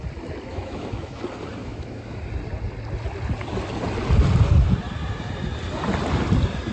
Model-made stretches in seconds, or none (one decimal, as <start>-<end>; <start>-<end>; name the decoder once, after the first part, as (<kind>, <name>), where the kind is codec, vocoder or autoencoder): 0.5-1.2 (autoencoder, DAC-VAE); 1.6-2.2